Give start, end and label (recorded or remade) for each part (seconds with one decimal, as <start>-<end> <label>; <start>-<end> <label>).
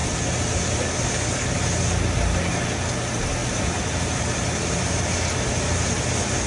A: 0.0-3.4 recorded; 3.4-5.0 remade; 5.0-6.5 recorded